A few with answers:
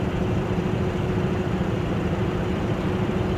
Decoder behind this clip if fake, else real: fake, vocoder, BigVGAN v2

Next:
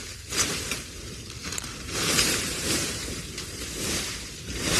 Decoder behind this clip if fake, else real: fake, vocoder, BigVGAN v2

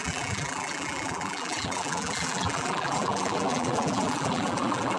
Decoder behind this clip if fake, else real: fake, vocoder, BigVGAN v2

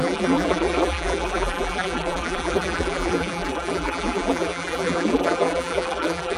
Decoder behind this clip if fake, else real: fake, vocoder, BigVGAN v2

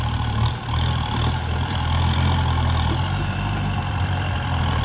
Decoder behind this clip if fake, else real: fake, vocoder, BigVGAN v2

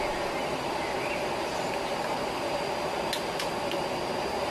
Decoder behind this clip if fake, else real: real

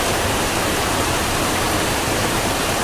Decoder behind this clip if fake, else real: fake, vocoder, BigVGAN v2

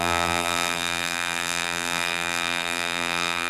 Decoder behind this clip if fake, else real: fake, vocoder, BigVGAN v2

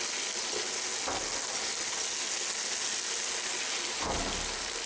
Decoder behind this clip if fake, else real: real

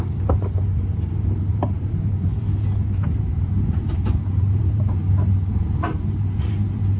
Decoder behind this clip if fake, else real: fake, vocoder, BigVGAN v2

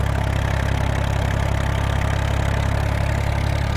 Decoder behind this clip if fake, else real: real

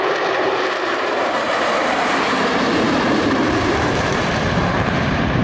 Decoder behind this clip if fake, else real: fake, vocoder, BigVGAN v2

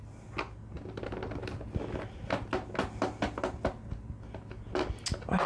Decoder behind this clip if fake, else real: real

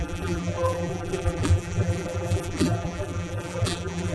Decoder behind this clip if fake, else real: fake, vocoder, BigVGAN v2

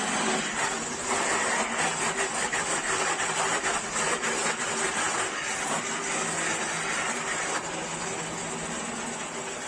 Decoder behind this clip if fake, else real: real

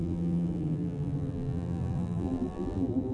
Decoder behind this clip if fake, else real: fake, vocoder, BigVGAN v2